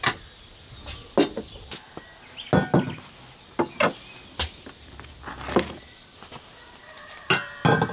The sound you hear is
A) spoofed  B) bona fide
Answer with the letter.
B